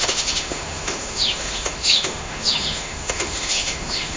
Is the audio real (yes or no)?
no